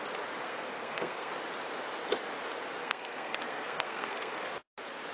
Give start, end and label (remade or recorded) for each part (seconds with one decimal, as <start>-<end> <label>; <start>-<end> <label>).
0.0-0.4 recorded; 0.4-1.3 remade; 1.3-2.8 recorded; 2.8-4.5 remade; 4.5-5.1 recorded